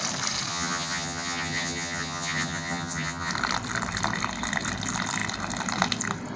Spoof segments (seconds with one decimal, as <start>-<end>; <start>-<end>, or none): 0.5-3.3